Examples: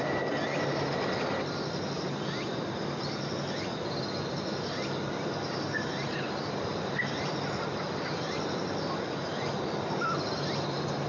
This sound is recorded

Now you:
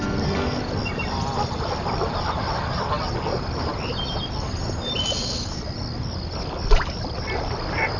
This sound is recorded